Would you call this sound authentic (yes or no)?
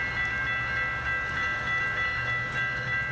yes